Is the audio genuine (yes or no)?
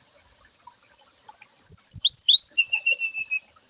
yes